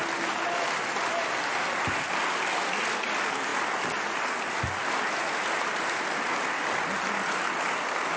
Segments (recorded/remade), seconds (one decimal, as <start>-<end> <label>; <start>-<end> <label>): 0.0-8.2 recorded